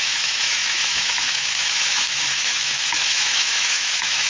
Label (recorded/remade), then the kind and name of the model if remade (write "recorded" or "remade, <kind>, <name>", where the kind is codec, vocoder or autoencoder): remade, autoencoder, DAC-VAE